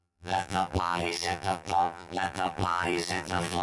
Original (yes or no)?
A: no